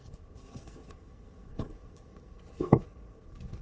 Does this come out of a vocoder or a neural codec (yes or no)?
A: yes